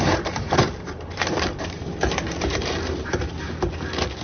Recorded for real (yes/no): no